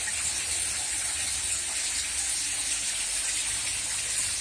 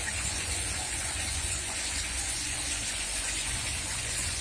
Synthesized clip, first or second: second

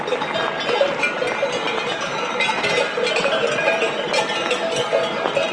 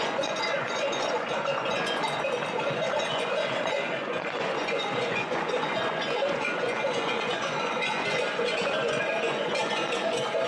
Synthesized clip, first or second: second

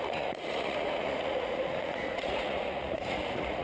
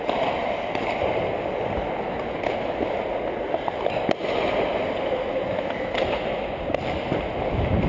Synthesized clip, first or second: first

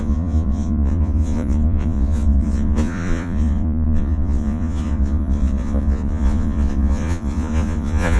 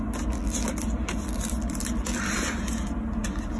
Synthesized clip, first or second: first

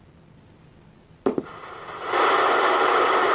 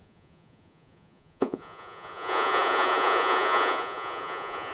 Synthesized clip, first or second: second